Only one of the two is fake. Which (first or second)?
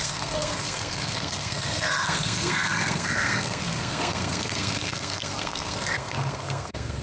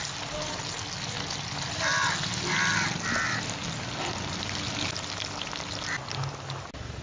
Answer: first